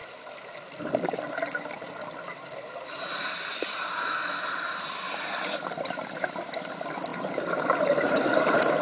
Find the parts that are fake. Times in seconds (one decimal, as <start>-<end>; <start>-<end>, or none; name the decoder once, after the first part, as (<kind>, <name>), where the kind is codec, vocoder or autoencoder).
none